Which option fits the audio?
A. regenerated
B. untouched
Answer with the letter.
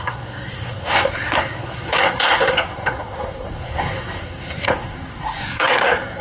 A